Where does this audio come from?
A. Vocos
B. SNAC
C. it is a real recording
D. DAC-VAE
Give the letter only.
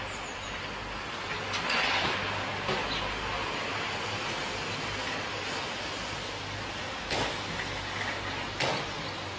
C